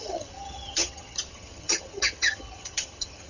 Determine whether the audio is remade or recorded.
remade